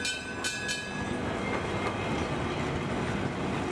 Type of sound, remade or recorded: recorded